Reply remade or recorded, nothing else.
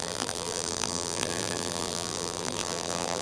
remade